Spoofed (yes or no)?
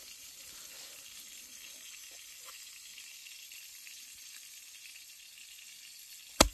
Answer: no